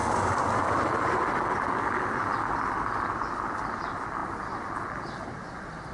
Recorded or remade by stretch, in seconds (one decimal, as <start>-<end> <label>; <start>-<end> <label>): 0.0-5.9 recorded